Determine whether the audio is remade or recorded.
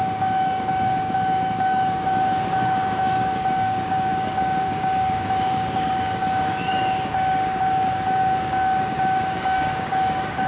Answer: remade